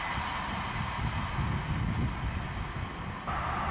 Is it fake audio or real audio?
real